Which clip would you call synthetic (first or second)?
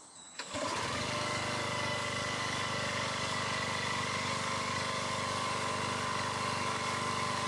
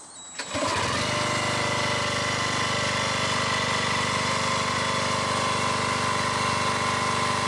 first